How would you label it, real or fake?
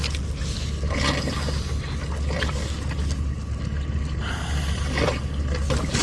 real